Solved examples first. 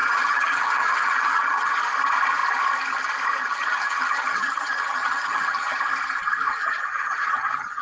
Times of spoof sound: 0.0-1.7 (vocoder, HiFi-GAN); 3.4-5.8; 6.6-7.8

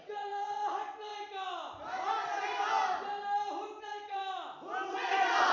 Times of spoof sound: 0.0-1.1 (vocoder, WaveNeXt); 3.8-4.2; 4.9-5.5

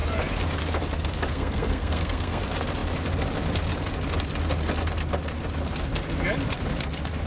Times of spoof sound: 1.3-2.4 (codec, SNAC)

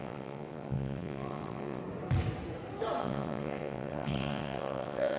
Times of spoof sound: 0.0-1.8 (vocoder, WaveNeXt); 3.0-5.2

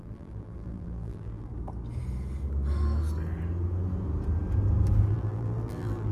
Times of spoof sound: 0.0-1.5 (vocoder, BigVGAN v2); 5.1-6.1